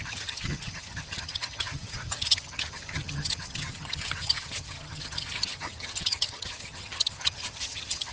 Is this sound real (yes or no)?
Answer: no